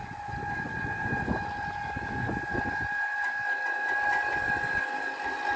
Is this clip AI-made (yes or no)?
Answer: no